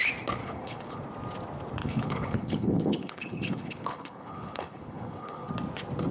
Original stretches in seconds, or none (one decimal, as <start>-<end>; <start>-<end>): 0.0-0.4; 1.0-1.8; 5.5-6.1